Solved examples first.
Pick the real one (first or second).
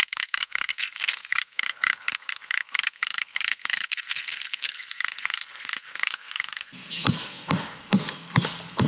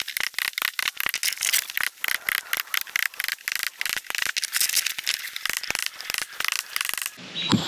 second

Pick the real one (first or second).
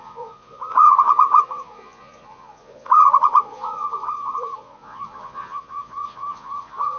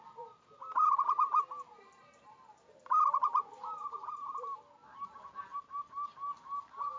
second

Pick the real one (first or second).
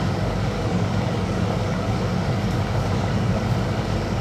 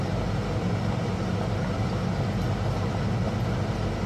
second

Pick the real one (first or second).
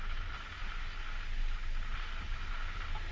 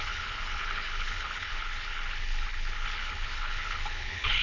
first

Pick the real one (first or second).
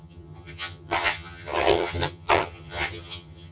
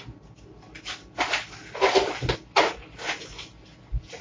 second